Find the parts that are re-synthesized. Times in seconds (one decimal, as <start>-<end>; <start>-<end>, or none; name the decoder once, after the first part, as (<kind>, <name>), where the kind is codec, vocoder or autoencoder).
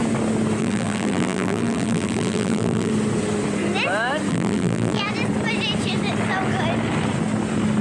0.6-2.9 (vocoder, BigVGAN v2); 4.3-5.0